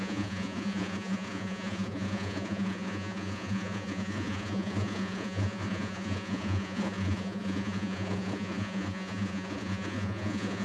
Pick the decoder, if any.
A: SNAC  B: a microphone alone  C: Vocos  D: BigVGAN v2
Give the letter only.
C